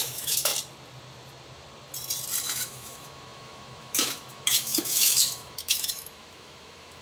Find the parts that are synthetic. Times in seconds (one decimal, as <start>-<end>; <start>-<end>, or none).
0.0-0.5; 2.4-7.0